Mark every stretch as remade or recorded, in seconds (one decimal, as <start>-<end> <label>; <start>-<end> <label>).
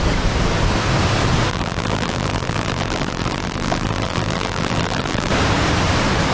0.0-1.5 recorded; 1.5-5.3 remade; 5.3-6.3 recorded